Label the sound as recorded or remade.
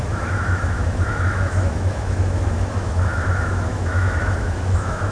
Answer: remade